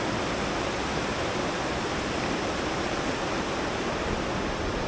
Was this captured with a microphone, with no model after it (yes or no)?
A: yes